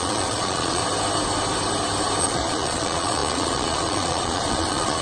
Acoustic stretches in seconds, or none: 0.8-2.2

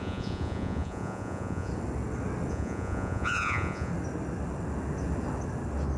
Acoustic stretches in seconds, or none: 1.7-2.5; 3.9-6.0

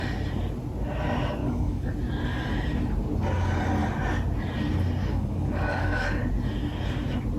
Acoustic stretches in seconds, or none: 0.0-1.4; 1.9-5.0; 6.1-7.4

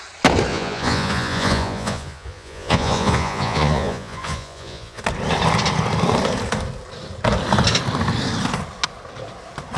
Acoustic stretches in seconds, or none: 0.0-0.5; 5.0-9.8

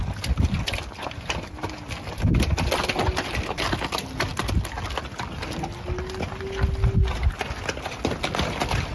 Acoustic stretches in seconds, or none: 0.0-8.9